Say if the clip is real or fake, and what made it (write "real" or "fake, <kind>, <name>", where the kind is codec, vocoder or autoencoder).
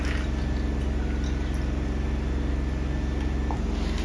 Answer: real